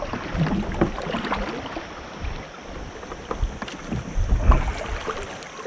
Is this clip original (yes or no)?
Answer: yes